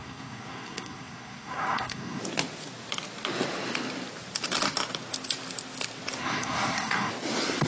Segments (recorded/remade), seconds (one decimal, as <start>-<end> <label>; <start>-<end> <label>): 0.0-2.2 remade; 2.2-6.2 recorded; 6.2-7.1 remade; 7.1-7.7 recorded